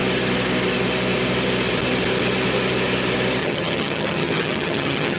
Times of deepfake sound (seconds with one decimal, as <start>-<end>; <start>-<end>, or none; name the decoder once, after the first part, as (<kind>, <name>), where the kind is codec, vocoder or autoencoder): 3.4-5.2 (vocoder, HiFi-GAN)